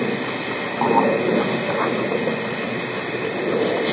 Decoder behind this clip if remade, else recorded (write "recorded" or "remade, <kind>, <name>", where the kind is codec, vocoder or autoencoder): recorded